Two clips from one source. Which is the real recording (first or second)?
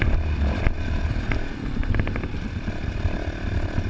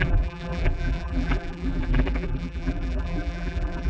first